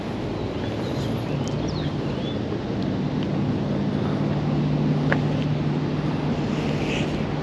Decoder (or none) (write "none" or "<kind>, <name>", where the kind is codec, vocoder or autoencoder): none